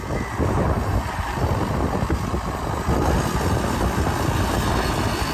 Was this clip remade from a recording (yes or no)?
no